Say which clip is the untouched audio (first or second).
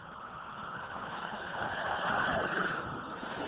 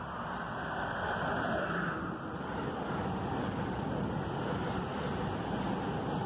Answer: second